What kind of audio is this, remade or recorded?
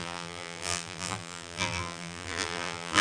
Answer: remade